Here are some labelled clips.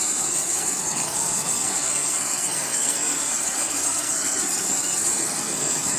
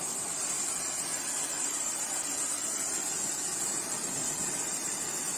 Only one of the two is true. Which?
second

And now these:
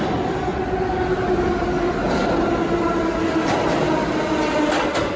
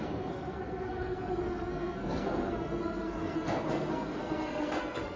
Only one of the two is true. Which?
first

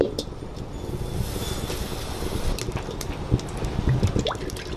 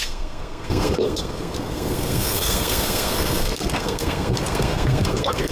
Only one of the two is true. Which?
first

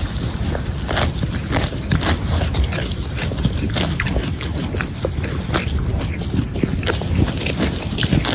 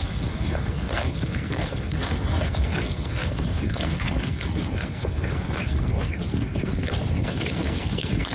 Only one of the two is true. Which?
first